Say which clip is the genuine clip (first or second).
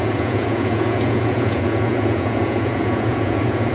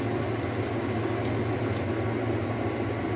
second